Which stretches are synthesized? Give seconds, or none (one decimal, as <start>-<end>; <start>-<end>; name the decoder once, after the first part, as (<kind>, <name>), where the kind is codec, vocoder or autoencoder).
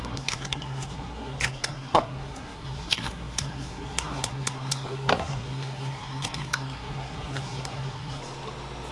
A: 0.0-8.2 (codec, SNAC)